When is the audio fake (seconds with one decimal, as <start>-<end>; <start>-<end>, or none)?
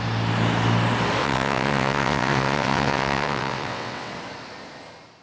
1.2-4.1